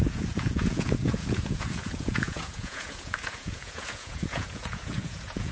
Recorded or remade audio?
remade